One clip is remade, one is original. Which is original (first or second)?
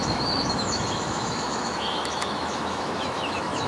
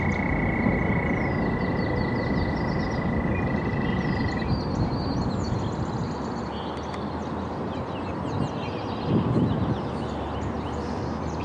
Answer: second